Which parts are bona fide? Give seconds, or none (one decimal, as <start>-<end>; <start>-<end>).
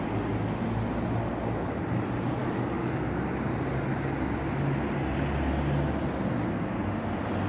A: 0.0-2.4; 3.3-7.5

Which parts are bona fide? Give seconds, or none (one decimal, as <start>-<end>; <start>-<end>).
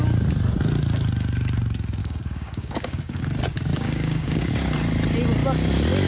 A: 0.0-2.0; 3.2-3.7; 4.5-6.1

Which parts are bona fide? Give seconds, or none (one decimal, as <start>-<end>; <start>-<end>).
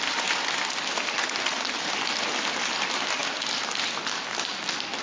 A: 0.0-5.0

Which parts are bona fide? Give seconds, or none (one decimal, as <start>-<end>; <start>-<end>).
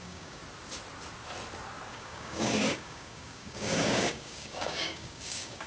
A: 0.4-1.9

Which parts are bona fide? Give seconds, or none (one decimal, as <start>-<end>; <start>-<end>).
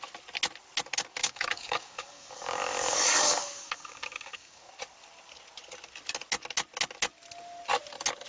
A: 0.0-1.2; 4.7-8.3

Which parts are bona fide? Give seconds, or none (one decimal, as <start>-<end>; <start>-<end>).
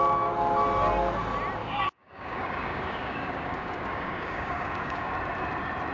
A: 0.0-1.6; 5.1-5.9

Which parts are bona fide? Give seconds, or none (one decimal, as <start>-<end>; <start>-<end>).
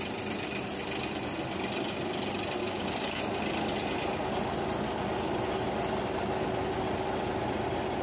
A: 0.0-2.6; 3.2-8.0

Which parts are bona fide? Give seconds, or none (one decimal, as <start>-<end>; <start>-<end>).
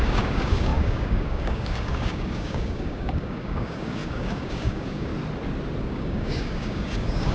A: 5.1-5.8